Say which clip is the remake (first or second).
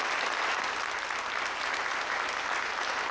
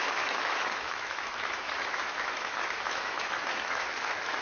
second